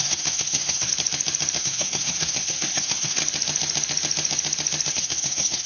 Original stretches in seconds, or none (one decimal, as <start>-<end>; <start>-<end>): 0.9-1.6; 3.2-4.9